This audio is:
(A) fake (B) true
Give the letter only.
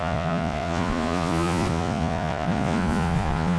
A